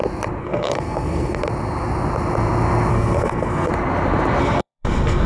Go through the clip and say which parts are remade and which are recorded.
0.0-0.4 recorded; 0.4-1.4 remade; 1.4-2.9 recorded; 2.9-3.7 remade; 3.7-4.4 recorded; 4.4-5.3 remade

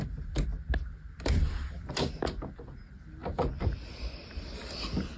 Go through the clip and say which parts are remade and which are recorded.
0.0-5.2 recorded